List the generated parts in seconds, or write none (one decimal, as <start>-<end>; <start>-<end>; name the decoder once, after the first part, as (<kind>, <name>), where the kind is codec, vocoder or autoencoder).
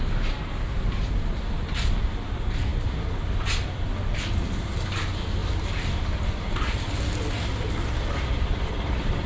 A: none